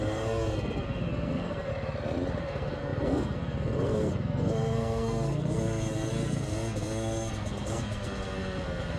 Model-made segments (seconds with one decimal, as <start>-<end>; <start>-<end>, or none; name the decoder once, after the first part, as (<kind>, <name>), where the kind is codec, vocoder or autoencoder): 0.0-1.7 (codec, SNAC); 2.4-9.0